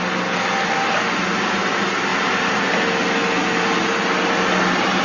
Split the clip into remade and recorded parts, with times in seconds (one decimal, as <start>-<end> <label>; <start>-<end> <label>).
0.0-2.1 recorded; 2.1-2.7 remade; 2.7-5.0 recorded